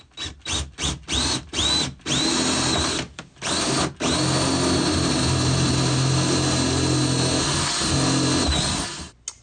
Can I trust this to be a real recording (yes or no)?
yes